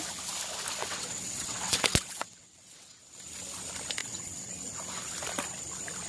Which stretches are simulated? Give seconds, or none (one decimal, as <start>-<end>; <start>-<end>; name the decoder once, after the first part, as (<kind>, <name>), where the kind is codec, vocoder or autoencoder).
0.8-3.0 (vocoder, WaveNeXt); 4.0-4.5